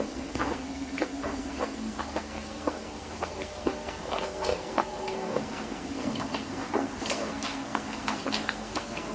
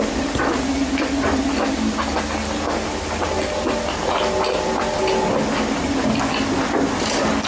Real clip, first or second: second